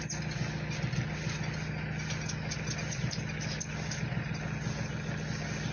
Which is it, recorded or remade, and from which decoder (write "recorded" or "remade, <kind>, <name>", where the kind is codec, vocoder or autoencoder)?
recorded